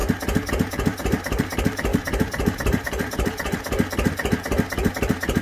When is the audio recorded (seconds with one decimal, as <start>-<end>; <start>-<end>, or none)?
0.0-0.5